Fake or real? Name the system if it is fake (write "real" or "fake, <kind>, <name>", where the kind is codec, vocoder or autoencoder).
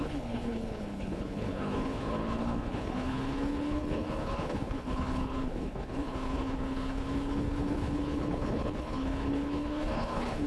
fake, codec, HILCodec